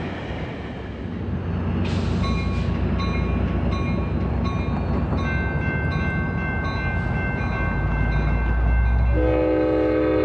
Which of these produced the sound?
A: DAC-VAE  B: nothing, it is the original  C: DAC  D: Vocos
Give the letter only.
B